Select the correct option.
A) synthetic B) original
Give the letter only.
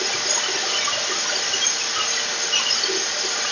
B